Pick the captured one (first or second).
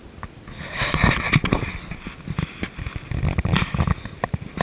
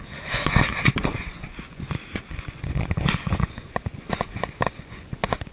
first